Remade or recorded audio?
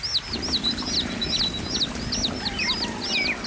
recorded